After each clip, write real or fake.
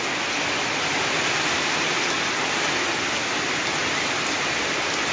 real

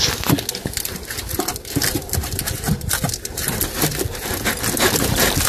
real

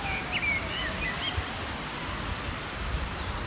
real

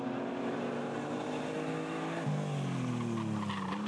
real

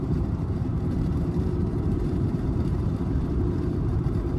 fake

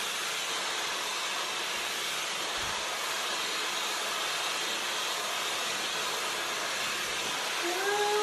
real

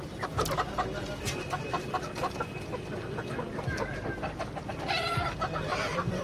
real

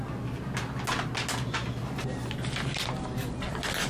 real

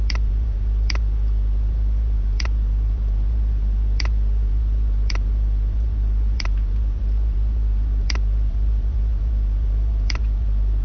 fake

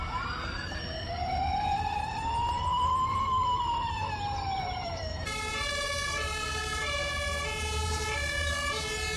fake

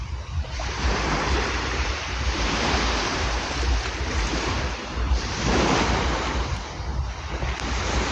fake